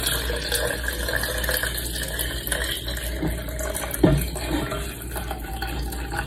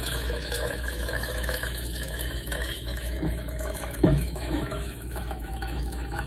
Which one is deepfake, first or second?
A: second